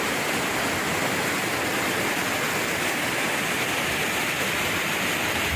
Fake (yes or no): no